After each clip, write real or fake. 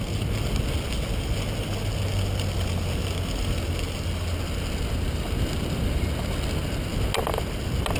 real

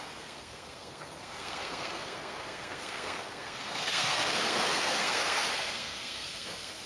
fake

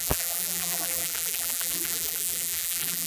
fake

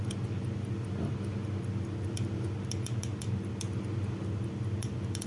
real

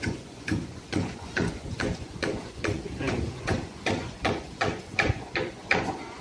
fake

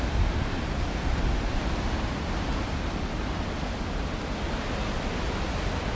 real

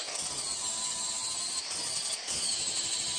real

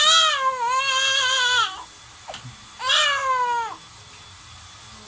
real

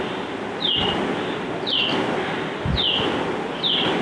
real